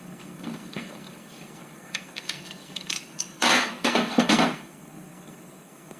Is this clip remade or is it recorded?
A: remade